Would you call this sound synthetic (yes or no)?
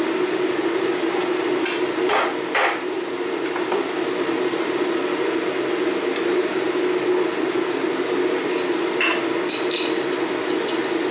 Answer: no